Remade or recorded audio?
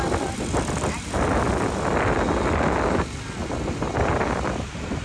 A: recorded